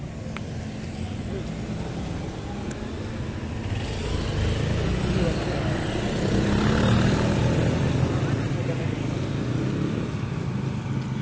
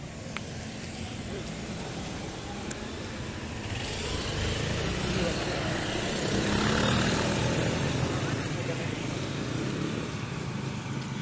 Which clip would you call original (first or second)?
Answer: first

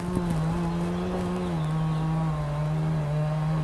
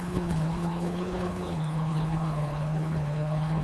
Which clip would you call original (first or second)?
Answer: first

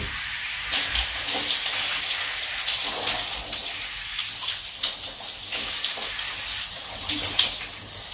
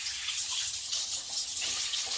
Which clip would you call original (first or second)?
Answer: first